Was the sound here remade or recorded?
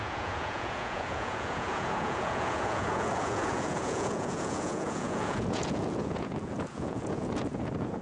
remade